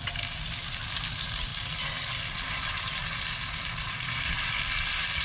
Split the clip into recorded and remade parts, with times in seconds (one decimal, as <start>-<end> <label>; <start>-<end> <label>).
0.0-5.2 recorded